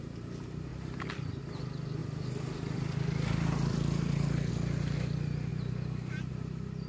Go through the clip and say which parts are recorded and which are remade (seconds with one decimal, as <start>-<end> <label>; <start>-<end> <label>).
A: 0.0-0.7 recorded; 0.7-1.3 remade; 1.3-2.0 recorded; 2.0-4.5 remade; 4.5-6.9 recorded